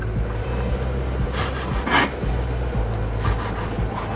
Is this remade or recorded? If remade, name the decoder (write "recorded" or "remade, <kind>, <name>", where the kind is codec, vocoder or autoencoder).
recorded